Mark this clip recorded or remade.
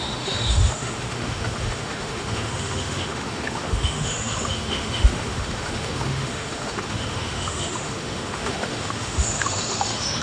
remade